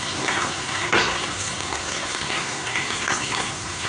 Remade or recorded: remade